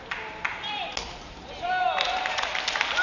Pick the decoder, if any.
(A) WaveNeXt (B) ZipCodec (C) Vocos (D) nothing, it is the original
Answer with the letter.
D